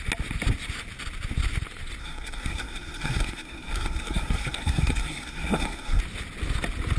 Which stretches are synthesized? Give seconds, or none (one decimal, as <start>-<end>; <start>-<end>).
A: 2.0-6.0